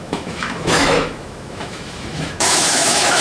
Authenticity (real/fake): fake